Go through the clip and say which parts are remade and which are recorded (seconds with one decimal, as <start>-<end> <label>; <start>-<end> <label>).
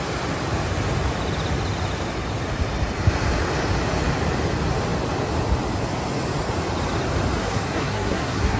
0.0-7.4 recorded; 7.4-8.6 remade